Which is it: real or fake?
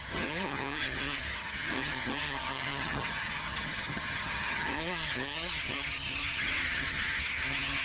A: fake